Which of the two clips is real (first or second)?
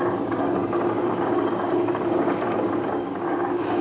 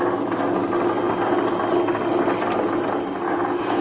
second